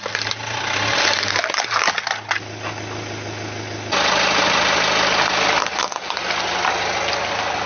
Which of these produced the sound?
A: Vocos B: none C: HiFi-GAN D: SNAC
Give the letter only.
B